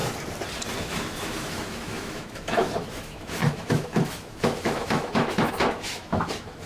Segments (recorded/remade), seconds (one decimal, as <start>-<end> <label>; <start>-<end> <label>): 0.0-0.8 recorded; 0.8-6.7 remade